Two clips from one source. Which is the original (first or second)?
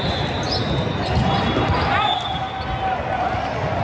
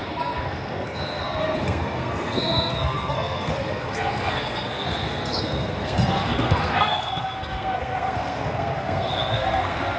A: first